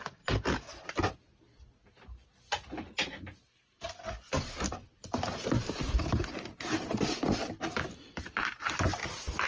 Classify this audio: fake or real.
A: real